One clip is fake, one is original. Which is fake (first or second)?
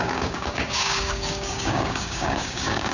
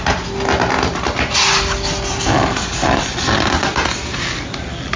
first